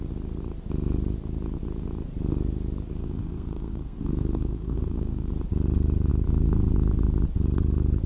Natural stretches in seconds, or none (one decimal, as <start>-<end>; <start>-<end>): 0.0-3.0; 5.3-8.1